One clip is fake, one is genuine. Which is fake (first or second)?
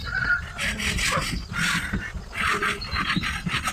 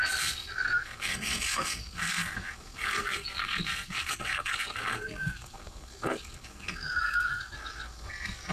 second